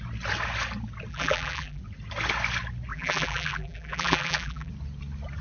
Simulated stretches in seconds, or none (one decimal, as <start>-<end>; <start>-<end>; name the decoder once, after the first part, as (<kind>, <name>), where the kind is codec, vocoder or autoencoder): 1.1-1.8 (vocoder, BigVGAN v2); 2.9-4.7